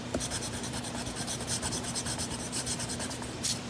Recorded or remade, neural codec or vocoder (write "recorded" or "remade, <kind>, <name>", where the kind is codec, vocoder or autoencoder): remade, vocoder, BigVGAN v2